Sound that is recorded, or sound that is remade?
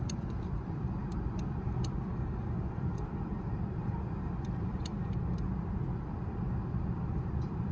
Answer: remade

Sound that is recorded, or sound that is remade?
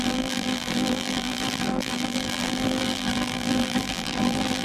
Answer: remade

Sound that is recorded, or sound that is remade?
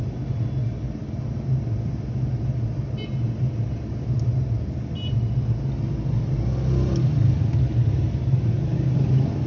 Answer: recorded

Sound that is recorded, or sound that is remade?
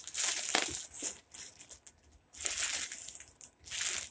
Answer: recorded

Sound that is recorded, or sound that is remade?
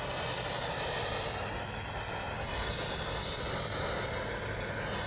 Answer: recorded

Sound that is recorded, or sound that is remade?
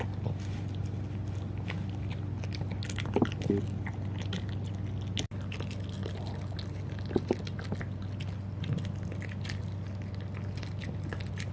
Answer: recorded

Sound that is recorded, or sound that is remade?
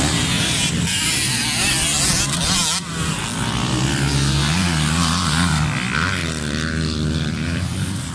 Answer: recorded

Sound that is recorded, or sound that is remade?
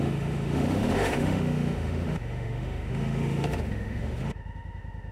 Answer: remade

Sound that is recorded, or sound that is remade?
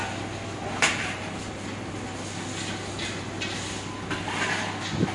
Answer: recorded